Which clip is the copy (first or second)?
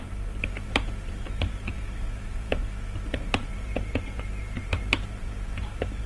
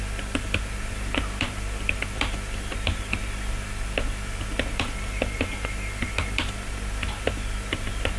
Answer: first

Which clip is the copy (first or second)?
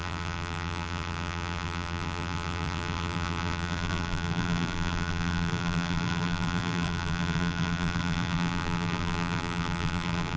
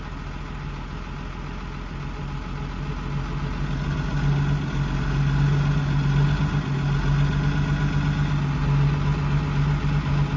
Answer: first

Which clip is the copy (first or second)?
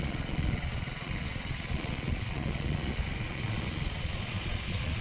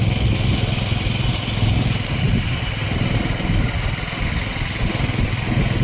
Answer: first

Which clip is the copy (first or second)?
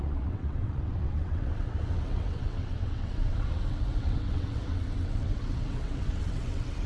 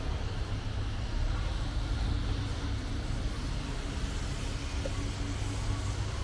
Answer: first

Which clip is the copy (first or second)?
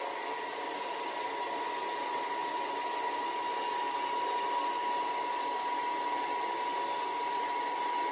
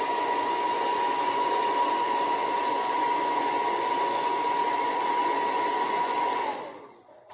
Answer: second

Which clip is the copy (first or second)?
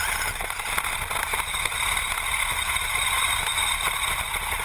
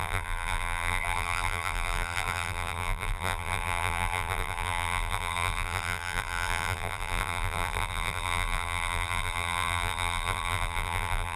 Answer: second